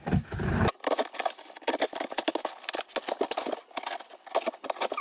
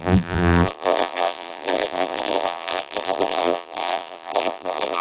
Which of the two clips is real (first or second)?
first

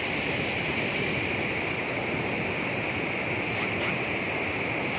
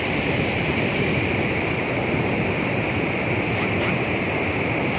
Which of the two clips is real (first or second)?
first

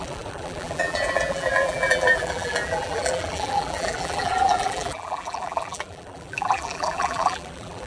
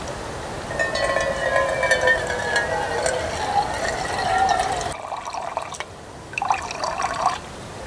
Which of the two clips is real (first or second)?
second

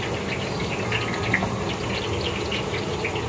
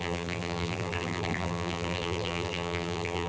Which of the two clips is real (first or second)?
first